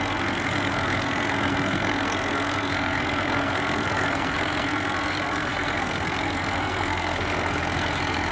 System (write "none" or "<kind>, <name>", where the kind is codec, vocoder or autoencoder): codec, SNAC